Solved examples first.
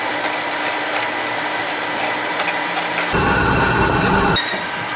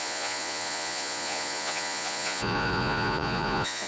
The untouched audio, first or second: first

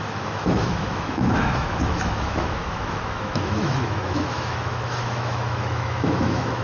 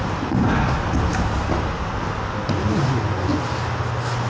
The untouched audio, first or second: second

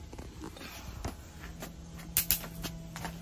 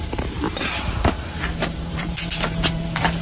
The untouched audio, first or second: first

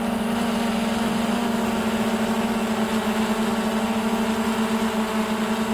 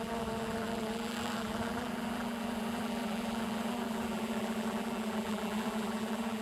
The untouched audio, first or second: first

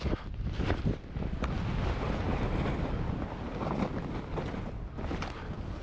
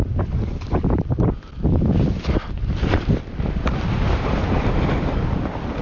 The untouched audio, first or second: first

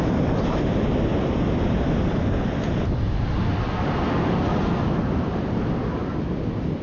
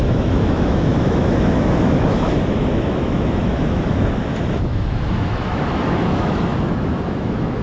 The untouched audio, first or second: first